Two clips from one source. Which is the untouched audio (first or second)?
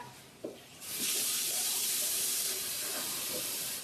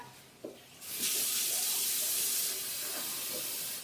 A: second